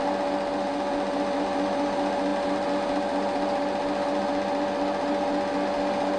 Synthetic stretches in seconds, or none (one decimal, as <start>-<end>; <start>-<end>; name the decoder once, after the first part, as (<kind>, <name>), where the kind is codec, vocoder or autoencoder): none